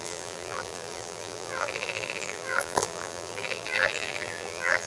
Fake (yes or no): yes